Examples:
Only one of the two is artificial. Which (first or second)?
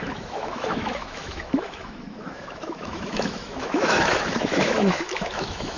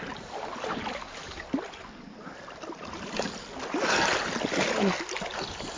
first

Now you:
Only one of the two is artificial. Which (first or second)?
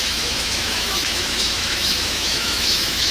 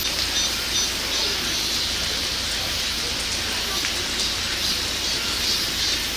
first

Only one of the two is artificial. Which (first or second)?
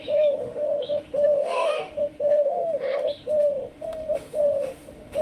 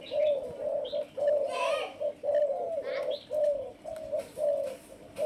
first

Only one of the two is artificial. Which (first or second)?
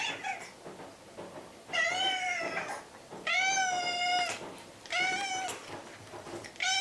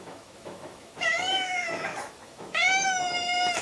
second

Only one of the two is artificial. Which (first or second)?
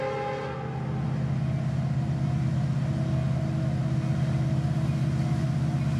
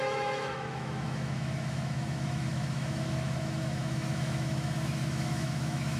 second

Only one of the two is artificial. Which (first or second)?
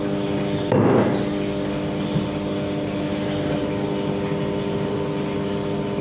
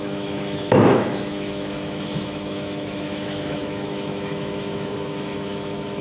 second